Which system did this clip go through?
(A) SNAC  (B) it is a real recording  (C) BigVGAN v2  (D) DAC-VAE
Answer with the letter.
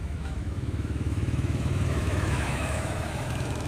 D